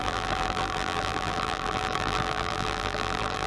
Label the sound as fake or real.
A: fake